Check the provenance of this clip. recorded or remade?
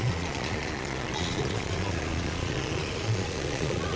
remade